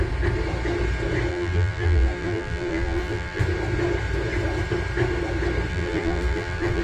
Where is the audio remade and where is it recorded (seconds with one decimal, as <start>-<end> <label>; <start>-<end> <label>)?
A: 0.0-1.3 recorded; 1.3-3.4 remade; 3.4-5.7 recorded; 5.7-6.8 remade